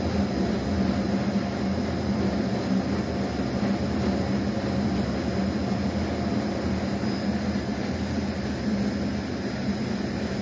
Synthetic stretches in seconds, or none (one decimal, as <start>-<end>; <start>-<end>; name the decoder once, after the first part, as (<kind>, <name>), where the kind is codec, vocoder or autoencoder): none